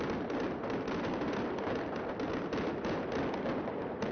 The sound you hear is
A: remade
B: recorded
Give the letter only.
B